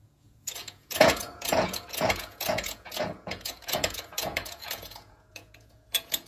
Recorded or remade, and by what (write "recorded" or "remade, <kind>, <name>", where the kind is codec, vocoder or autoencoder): remade, vocoder, Vocos